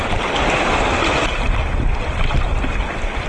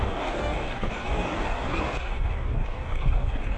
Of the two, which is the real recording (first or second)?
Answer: first